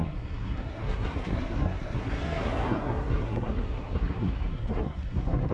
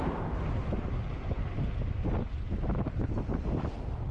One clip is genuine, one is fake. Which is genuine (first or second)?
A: second